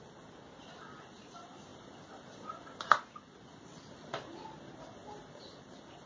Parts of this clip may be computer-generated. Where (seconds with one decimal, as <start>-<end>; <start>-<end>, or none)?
none

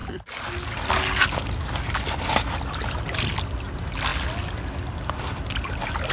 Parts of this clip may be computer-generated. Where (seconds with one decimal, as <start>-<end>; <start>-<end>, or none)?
none

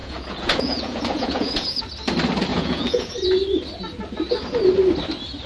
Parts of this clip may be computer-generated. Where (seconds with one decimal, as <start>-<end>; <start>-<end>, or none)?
0.0-1.8; 2.5-3.1

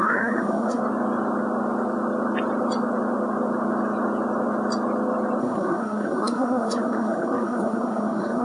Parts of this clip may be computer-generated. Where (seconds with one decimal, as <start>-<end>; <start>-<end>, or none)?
0.0-0.8; 5.4-8.4

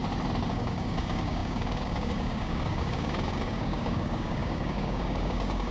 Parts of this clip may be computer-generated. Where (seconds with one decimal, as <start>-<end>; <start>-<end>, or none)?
0.5-5.7

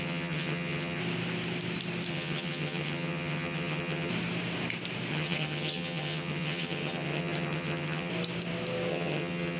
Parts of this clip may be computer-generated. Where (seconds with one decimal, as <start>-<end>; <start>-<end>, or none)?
0.0-1.0; 2.1-4.1; 5.1-8.1; 8.9-9.6

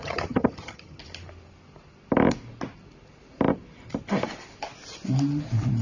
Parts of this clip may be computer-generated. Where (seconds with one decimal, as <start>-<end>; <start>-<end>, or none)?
0.0-1.0